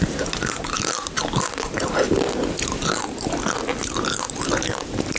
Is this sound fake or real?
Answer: real